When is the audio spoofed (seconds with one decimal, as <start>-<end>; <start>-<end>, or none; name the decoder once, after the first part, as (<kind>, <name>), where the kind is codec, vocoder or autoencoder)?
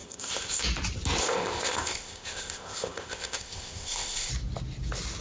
0.0-0.6 (codec, ZipCodec); 1.2-4.3